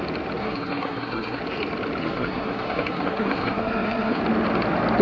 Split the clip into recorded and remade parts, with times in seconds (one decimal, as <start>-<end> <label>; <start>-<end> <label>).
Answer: 0.0-0.4 recorded; 0.4-1.4 remade; 1.4-2.0 recorded; 2.0-4.2 remade; 4.2-5.0 recorded